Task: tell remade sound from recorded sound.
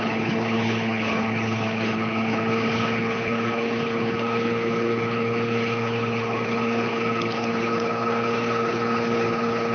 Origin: remade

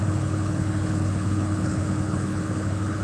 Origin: remade